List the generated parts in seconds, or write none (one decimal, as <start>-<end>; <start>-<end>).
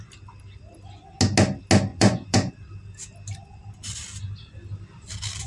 1.9-2.5